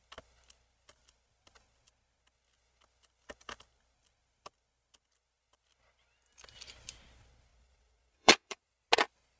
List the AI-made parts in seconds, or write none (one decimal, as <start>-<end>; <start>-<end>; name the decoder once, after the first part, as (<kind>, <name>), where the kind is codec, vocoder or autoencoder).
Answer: 7.5-8.7 (vocoder, Vocos)